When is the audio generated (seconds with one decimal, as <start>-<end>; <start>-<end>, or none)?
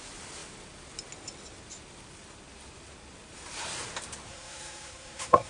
4.3-5.5